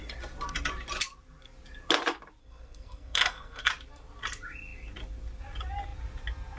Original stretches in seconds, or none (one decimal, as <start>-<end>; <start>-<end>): 0.0-2.4; 3.7-6.6